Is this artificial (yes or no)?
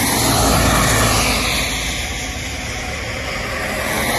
no